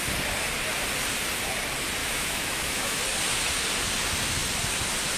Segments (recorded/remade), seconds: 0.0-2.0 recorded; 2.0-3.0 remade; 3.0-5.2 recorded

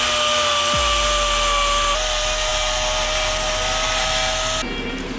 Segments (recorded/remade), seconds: 0.0-5.2 recorded

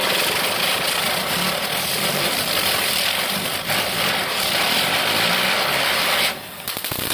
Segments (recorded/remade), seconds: 0.0-4.1 remade; 4.1-7.1 recorded

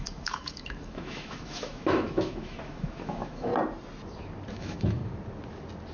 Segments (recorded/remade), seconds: 0.0-3.5 remade; 3.5-4.5 recorded; 4.5-5.0 remade; 5.0-5.9 recorded

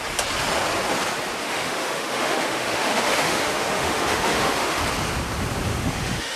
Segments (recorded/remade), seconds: 0.0-1.4 recorded; 1.4-4.8 remade; 4.8-5.7 recorded; 5.7-6.4 remade

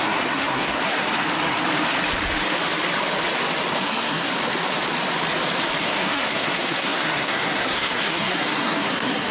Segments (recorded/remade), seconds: 0.0-1.1 remade; 1.1-3.8 recorded; 3.8-4.3 remade; 4.3-5.8 recorded; 5.8-9.3 remade

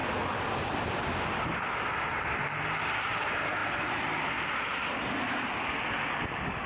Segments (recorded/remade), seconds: 0.0-3.6 recorded; 3.6-4.3 remade; 4.3-6.7 recorded